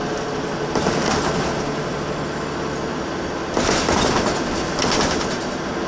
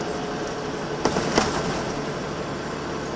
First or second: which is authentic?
first